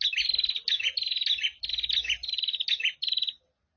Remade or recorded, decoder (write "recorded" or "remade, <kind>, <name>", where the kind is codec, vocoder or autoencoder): recorded